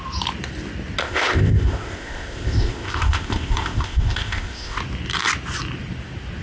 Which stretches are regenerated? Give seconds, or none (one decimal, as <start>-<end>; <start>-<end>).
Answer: 1.0-4.8